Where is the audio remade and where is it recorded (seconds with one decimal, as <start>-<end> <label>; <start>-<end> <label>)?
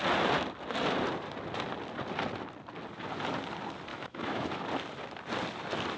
0.0-3.9 recorded; 3.9-4.6 remade; 4.6-6.0 recorded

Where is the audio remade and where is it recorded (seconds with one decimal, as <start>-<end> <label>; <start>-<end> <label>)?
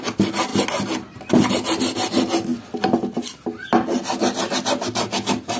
0.0-5.6 recorded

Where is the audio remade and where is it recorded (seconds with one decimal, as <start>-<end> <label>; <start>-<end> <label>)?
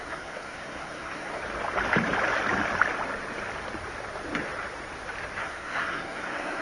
0.0-1.4 remade; 1.4-5.4 recorded; 5.4-6.6 remade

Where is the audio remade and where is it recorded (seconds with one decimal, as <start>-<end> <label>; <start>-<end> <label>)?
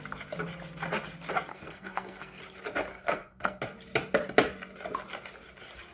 0.0-1.5 recorded; 1.5-2.4 remade; 2.4-2.9 recorded; 2.9-3.6 remade; 3.6-5.9 recorded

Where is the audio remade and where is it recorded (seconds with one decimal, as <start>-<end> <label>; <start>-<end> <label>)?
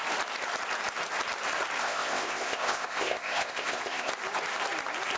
0.0-1.8 recorded; 1.8-4.1 remade; 4.1-5.2 recorded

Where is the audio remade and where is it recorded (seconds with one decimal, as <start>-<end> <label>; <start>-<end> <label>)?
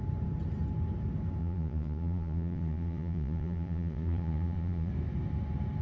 0.0-1.4 recorded; 1.4-4.9 remade; 4.9-5.8 recorded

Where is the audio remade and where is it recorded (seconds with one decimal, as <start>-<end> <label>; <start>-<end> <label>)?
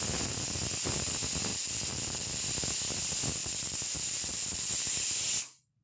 0.0-1.5 recorded; 1.5-2.4 remade; 2.4-3.4 recorded; 3.4-4.7 remade; 4.7-5.8 recorded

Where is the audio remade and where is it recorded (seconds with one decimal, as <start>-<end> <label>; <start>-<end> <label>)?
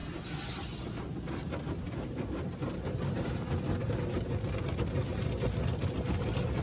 0.0-6.6 recorded